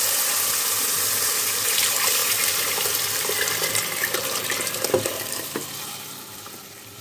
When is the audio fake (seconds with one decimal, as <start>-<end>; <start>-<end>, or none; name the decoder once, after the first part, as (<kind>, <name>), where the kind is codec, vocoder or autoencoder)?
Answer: 0.0-7.0 (vocoder, BigVGAN v2)